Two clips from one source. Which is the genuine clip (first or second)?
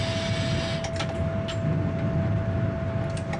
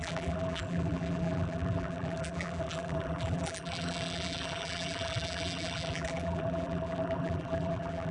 first